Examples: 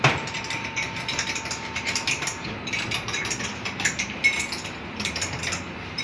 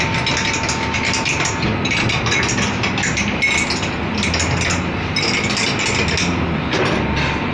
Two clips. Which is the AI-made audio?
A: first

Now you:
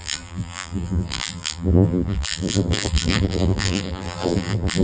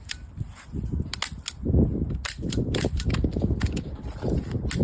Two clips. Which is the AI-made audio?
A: first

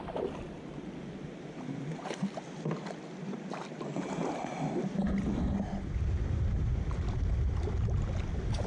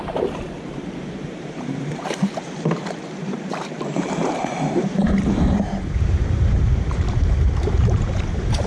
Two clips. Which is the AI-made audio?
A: second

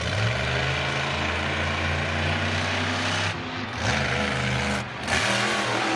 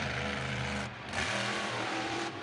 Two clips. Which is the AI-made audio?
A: second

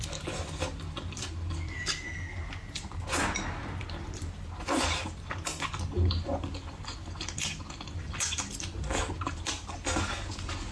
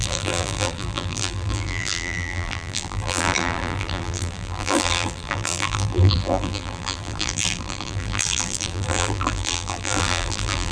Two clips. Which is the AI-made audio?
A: second